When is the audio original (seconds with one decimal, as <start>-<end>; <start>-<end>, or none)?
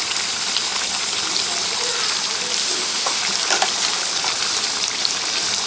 0.0-2.6; 3.2-5.7